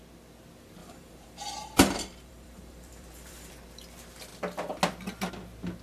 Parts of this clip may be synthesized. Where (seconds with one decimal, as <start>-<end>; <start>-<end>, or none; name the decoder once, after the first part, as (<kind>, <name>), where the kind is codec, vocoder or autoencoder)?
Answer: 0.8-3.5 (vocoder, BigVGAN v2)